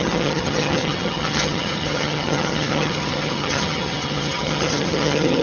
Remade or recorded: remade